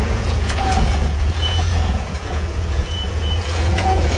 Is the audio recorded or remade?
remade